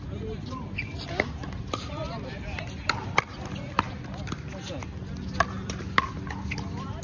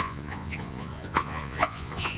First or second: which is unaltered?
first